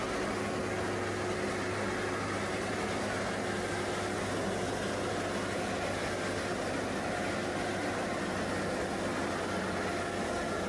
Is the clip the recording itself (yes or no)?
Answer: yes